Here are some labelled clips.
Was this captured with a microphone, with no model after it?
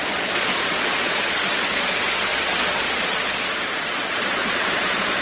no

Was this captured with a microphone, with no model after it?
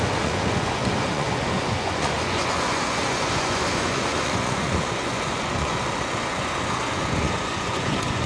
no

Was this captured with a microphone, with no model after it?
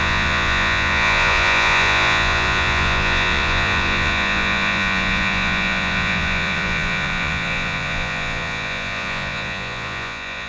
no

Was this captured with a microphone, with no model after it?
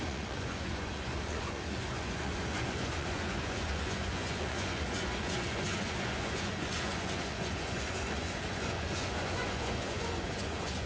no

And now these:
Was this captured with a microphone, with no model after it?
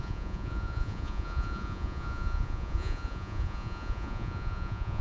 no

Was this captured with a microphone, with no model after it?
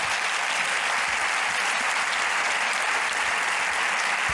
yes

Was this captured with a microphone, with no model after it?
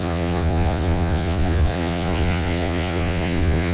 no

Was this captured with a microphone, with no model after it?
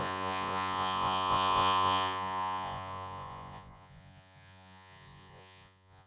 no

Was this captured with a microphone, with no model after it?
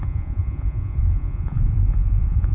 no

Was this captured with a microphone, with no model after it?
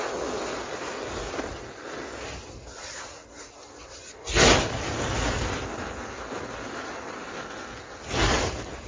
yes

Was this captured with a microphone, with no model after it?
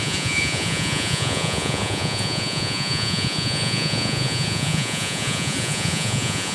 no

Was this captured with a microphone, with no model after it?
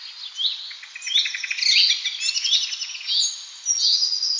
yes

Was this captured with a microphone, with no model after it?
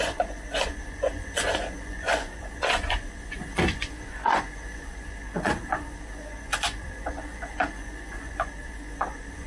no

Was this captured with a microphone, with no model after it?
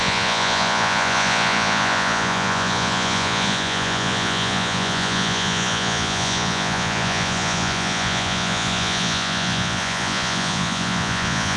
no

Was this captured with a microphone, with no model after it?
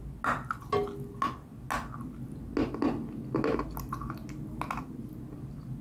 yes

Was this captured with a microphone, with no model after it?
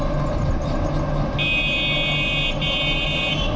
yes